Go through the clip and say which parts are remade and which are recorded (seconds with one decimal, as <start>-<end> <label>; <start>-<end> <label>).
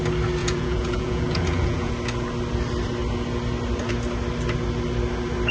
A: 0.0-0.4 recorded; 0.4-1.9 remade; 1.9-5.5 recorded